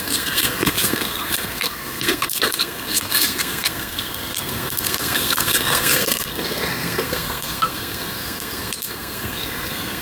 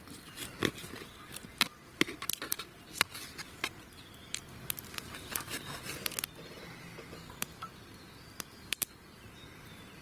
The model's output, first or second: first